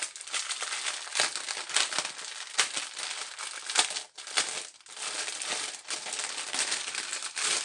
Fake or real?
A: real